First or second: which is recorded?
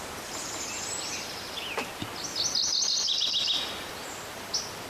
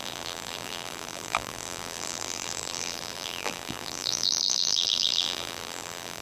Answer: first